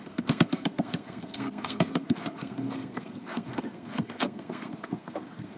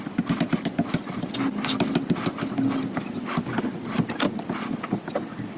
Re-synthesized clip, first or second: first